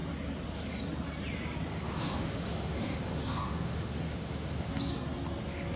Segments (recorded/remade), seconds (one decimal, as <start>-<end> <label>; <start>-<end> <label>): 0.0-1.7 recorded; 1.7-4.7 remade; 4.7-5.8 recorded